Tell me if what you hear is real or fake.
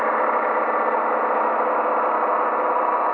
real